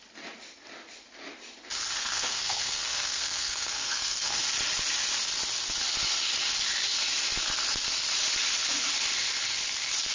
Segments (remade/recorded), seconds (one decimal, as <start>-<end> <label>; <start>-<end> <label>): 0.0-2.0 recorded; 2.0-4.4 remade; 4.4-10.1 recorded